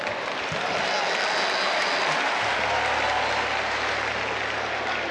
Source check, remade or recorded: recorded